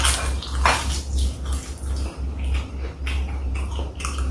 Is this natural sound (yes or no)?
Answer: yes